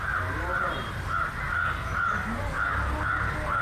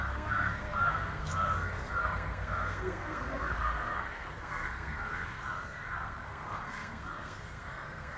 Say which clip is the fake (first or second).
second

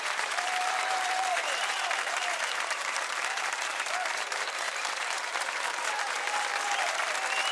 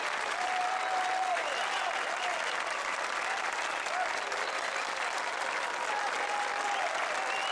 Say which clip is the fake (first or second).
first